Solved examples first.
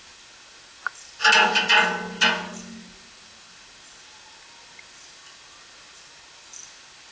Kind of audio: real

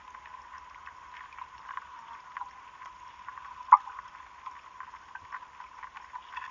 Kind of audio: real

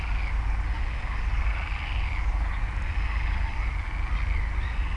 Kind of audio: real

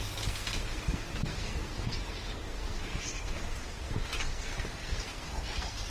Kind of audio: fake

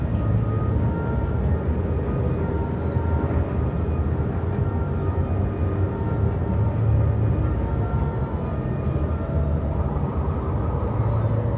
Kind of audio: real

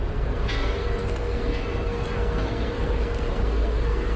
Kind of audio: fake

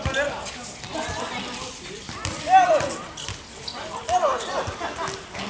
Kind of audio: real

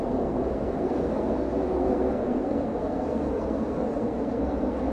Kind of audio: fake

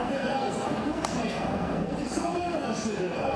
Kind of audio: fake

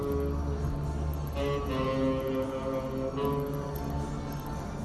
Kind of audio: real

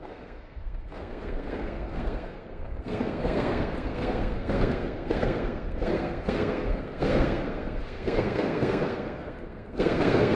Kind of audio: fake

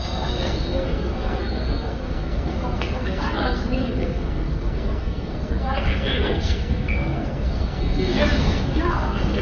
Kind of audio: fake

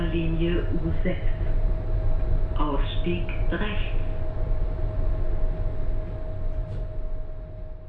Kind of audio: real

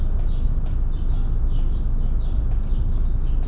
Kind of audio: real